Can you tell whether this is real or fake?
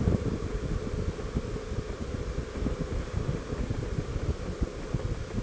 real